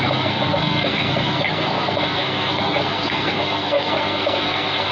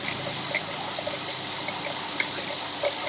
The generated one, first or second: first